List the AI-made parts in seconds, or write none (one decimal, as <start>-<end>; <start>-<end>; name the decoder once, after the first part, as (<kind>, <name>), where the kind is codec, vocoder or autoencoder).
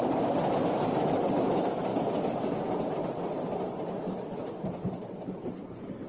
none